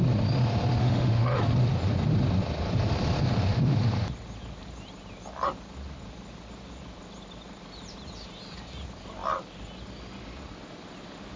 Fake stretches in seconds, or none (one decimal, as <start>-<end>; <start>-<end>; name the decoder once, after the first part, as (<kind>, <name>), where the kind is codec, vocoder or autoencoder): 0.8-1.4 (autoencoder, DAC-VAE)